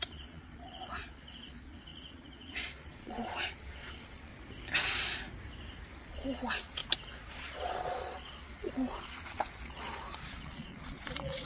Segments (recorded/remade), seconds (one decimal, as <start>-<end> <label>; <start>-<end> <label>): 0.0-4.3 remade; 4.3-6.0 recorded; 6.0-6.8 remade; 6.8-7.3 recorded; 7.3-11.5 remade